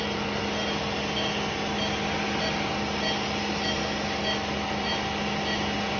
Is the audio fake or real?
real